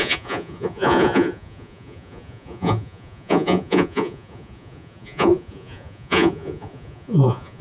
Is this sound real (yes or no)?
no